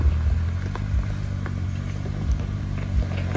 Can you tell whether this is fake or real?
real